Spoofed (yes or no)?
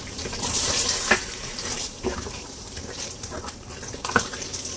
yes